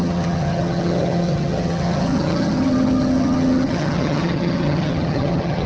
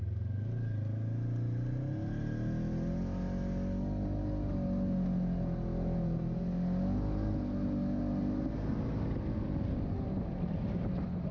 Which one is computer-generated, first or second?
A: first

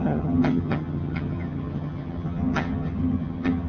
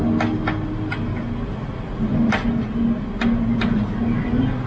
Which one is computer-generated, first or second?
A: first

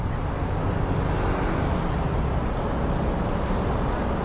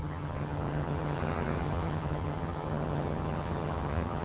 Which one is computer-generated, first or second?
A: second